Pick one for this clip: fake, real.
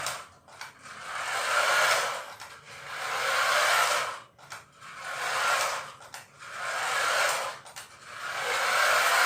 real